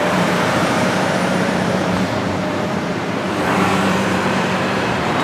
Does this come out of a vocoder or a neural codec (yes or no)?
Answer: yes